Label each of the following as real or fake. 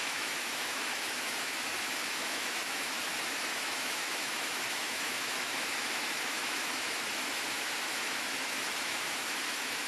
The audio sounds fake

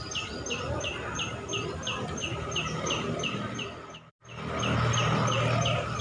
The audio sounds fake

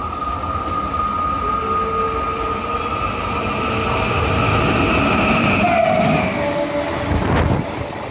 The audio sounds real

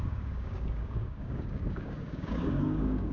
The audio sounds fake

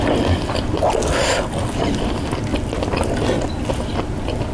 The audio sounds real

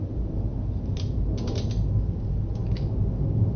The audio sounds real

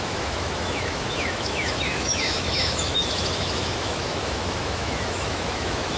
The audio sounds fake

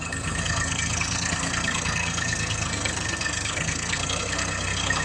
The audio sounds fake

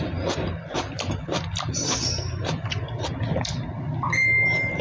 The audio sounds fake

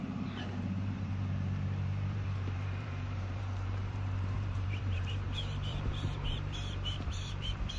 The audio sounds fake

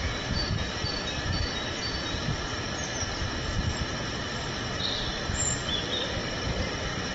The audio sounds fake